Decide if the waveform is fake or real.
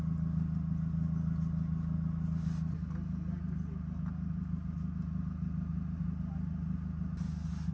real